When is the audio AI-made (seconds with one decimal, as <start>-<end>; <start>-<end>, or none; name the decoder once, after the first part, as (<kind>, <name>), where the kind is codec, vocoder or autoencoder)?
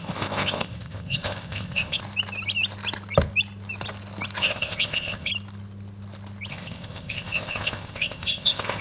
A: 0.0-2.0 (codec, ZipCodec); 4.4-5.3; 6.5-8.8